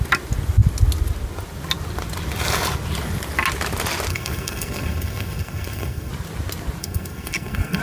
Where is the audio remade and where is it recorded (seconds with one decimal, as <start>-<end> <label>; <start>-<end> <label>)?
0.0-4.1 recorded; 4.1-6.1 remade; 6.1-6.8 recorded; 6.8-7.8 remade